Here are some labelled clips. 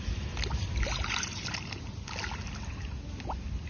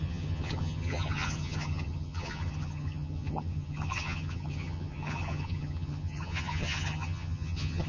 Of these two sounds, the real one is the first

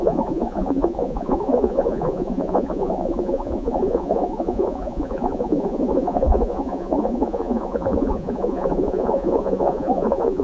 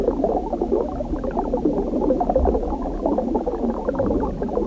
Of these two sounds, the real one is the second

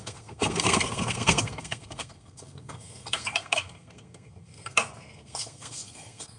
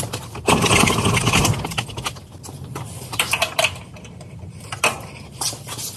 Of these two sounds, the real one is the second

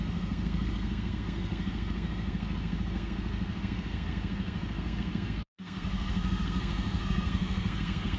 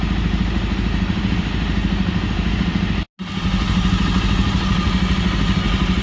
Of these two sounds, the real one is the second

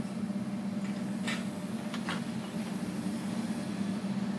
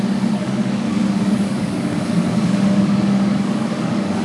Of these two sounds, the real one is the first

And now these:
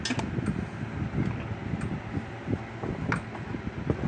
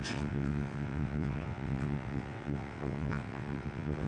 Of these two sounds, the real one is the first